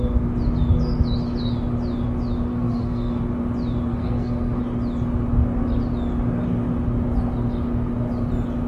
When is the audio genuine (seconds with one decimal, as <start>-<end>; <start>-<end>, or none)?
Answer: 0.0-2.5; 3.2-3.9; 4.6-8.7